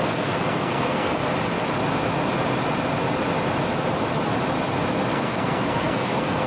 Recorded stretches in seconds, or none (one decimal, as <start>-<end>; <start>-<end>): 1.2-5.1